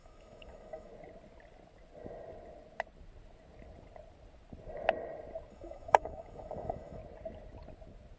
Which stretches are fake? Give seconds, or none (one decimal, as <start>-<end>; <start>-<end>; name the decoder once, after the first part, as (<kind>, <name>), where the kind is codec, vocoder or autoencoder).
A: 0.0-0.9 (autoencoder, DAC-VAE); 5.5-7.0